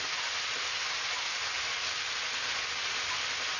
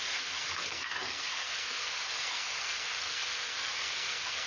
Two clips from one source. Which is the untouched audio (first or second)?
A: first